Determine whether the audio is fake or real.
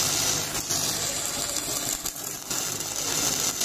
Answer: real